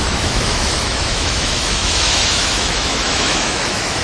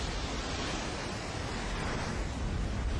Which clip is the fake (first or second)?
first